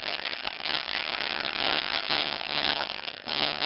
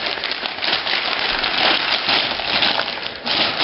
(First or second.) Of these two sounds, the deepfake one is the first